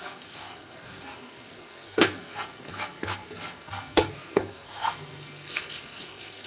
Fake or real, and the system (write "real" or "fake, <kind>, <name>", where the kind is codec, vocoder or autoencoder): fake, codec, SNAC